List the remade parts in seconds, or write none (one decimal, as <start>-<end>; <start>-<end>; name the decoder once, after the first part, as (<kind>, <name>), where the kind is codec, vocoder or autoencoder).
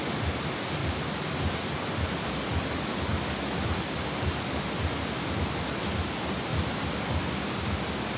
none